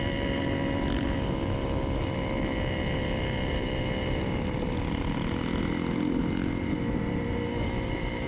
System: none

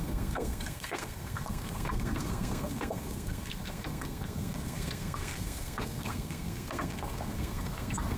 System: codec, SNAC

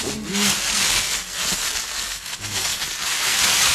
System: codec, SNAC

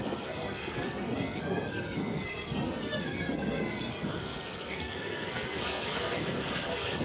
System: codec, SNAC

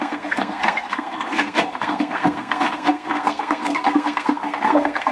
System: codec, SNAC